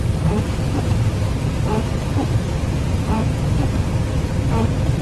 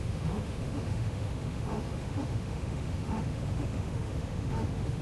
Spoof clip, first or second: second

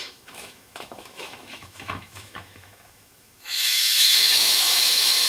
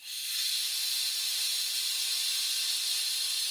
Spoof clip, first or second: first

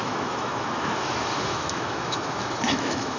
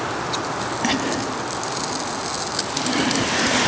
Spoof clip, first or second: first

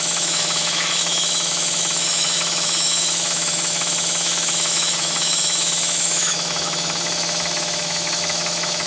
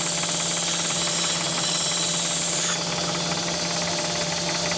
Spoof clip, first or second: first